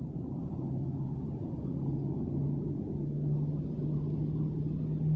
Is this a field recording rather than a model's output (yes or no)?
yes